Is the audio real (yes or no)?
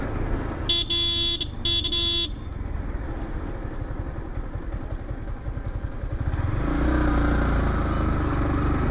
yes